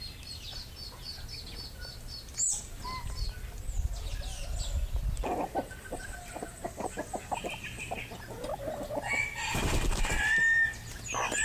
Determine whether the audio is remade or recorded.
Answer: recorded